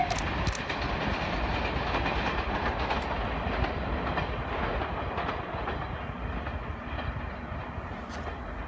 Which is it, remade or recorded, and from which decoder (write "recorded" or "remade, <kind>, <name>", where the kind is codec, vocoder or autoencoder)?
recorded